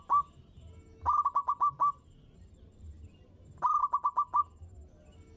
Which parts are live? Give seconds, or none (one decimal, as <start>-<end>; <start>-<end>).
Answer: 0.0-1.4; 3.4-5.4